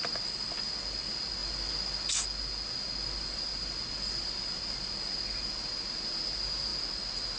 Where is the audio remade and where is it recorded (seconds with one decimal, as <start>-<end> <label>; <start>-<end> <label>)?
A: 0.0-7.4 recorded